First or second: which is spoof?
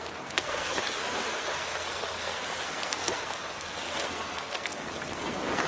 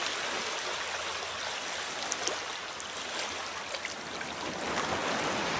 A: first